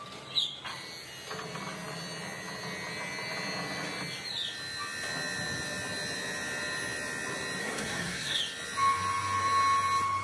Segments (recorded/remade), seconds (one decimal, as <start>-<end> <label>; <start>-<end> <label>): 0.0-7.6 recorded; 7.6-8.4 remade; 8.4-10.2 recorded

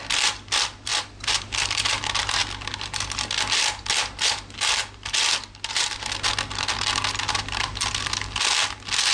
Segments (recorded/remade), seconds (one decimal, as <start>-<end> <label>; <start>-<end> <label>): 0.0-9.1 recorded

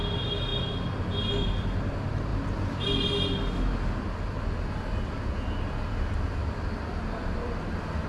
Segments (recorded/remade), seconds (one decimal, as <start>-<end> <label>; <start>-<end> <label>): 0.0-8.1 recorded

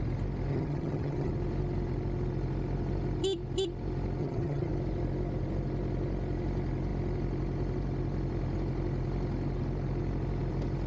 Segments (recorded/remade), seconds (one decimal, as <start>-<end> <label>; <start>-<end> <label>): 0.0-0.5 recorded; 0.5-1.3 remade; 1.3-4.2 recorded; 4.2-4.7 remade; 4.7-10.9 recorded

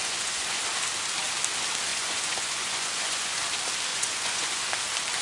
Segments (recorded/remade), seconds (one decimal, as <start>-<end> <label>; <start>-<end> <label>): 0.0-0.6 remade; 0.6-1.9 recorded; 1.9-3.4 remade; 3.4-3.9 recorded; 3.9-4.7 remade; 4.7-5.2 recorded

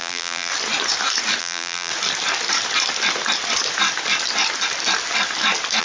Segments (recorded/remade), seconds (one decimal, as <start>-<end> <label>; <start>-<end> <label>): 0.0-0.5 remade; 0.5-1.4 recorded; 1.4-1.9 remade; 1.9-5.8 recorded

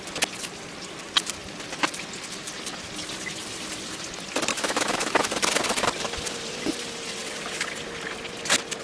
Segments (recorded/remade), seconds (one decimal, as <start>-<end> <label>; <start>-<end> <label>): 0.0-4.5 recorded; 4.5-5.3 remade; 5.3-8.8 recorded